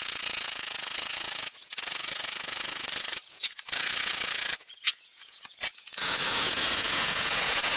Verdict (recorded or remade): remade